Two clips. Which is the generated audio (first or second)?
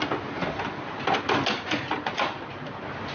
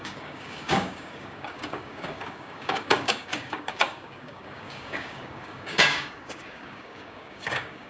second